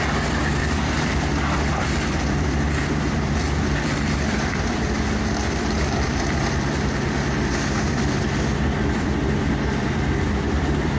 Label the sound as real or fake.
fake